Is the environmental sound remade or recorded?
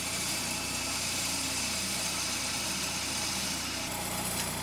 remade